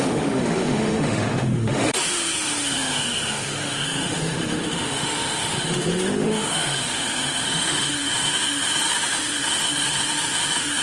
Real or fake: fake